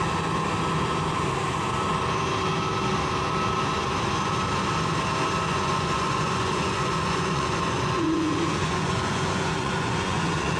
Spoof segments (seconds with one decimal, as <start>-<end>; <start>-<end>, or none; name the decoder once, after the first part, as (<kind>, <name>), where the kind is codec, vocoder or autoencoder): 5.5-10.6 (vocoder, Vocos)